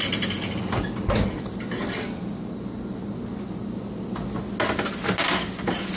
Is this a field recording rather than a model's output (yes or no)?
yes